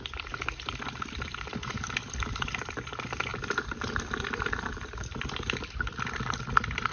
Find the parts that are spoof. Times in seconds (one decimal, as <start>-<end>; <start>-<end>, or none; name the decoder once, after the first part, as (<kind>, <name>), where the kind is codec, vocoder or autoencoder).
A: none